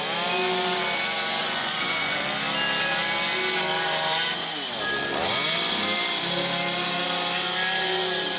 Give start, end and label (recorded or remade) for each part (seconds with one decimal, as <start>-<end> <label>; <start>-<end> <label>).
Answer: 0.0-1.4 recorded; 1.4-2.2 remade; 2.2-8.4 recorded